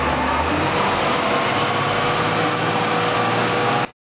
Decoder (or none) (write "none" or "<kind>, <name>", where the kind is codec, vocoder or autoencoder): none